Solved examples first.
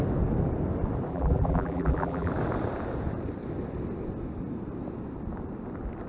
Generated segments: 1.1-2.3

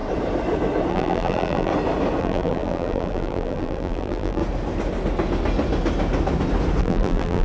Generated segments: 0.9-1.7; 2.2-4.4; 6.8-7.4

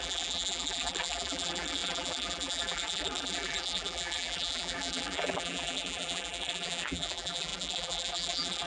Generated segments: 0.0-8.7